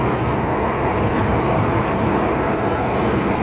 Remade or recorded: recorded